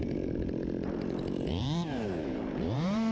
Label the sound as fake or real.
fake